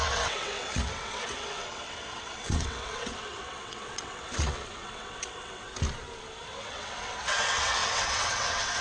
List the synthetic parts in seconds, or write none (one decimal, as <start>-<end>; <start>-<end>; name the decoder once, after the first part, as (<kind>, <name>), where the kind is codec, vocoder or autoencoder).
0.0-5.7 (vocoder, WaveNeXt); 6.6-8.8